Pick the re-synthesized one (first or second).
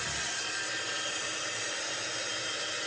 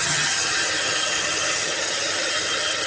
second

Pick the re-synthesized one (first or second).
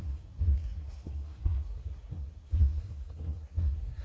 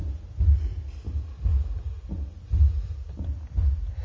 first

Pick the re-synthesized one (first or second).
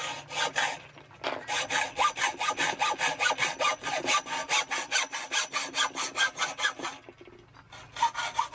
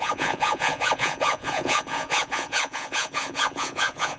second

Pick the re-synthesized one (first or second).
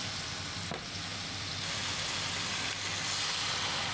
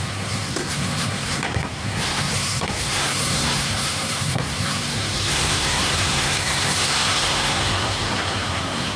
second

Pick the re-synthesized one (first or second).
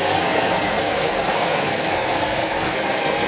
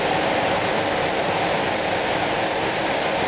first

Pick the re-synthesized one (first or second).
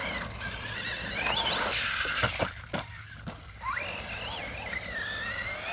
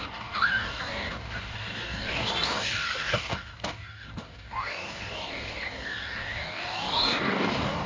second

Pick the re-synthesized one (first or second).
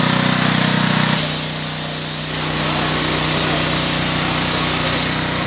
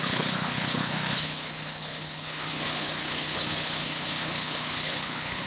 second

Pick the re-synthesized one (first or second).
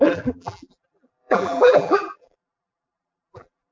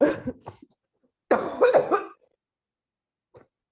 first